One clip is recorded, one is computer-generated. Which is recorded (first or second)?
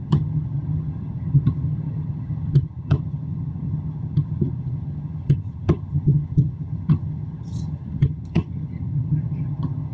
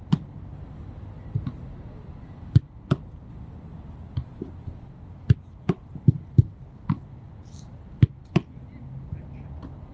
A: second